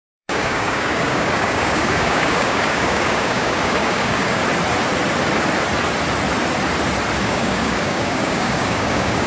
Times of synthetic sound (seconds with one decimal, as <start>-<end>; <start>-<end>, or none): 0.0-4.4; 7.2-9.3